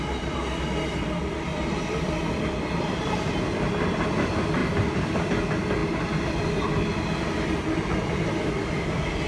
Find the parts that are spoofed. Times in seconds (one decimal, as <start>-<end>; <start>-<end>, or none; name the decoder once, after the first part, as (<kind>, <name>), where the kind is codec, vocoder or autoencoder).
1.5-3.6 (vocoder, BigVGAN v2); 4.6-5.3; 5.8-7.5